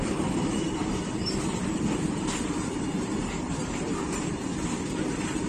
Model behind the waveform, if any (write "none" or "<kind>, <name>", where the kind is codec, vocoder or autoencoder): vocoder, BigVGAN v2